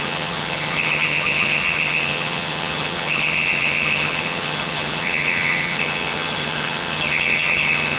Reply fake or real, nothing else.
fake